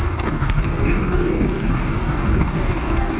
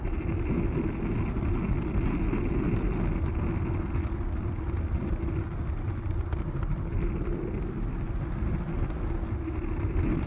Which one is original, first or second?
second